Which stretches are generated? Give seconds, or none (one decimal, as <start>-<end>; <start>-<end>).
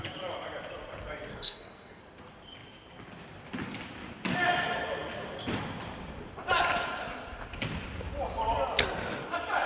1.3-2.0